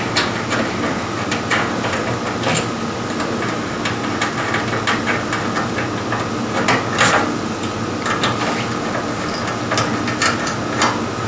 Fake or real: real